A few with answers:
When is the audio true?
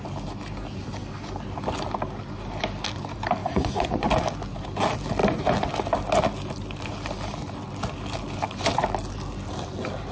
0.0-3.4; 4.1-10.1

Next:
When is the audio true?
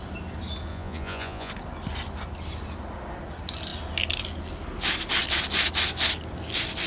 0.0-0.7; 1.5-6.9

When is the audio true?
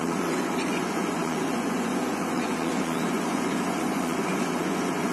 none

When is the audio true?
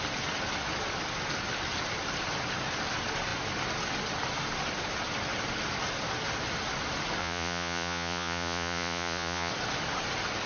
0.0-7.2; 9.5-10.5